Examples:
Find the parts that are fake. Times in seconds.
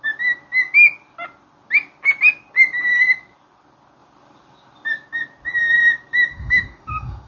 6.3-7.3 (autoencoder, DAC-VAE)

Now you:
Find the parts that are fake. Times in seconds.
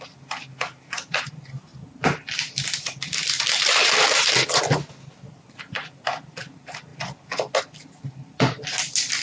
none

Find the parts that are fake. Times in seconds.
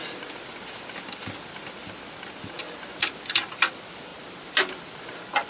none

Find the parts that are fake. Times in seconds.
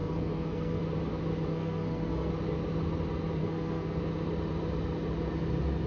0.0-0.8 (codec, SNAC); 1.5-2.3; 3.4-4.0